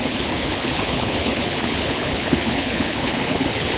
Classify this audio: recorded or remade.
remade